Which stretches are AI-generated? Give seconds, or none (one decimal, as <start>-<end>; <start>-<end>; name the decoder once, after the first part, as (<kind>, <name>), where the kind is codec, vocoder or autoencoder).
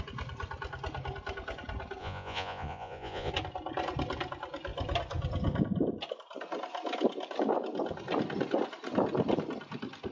2.0-3.3 (vocoder, Vocos)